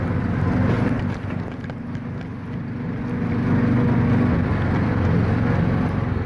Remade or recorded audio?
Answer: recorded